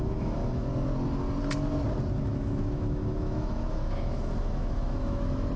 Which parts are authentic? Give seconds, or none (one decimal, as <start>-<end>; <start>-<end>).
0.7-2.2